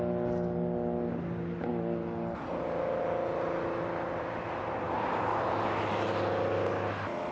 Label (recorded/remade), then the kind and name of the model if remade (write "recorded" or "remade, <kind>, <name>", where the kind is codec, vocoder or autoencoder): recorded